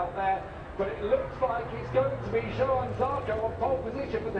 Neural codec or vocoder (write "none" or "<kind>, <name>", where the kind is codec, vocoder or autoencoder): none